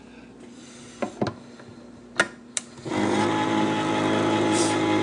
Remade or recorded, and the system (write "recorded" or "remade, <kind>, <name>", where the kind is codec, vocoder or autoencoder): recorded